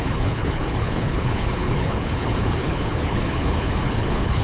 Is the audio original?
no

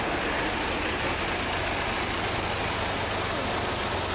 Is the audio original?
yes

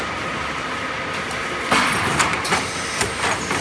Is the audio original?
yes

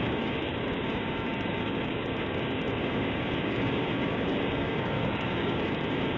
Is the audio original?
no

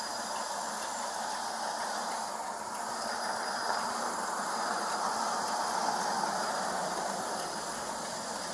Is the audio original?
yes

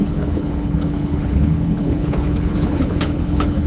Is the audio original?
no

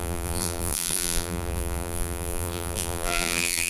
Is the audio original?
no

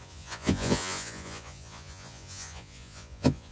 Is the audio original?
no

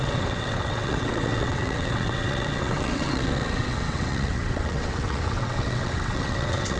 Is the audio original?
no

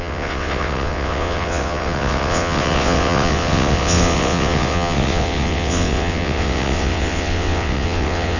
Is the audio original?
no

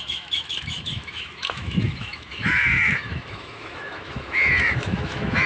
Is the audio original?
no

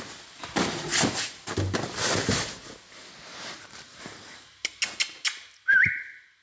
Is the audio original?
yes